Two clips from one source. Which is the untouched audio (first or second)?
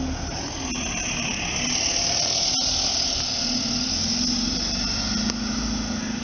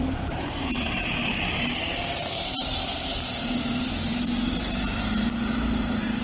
first